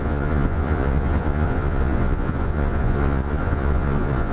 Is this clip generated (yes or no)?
yes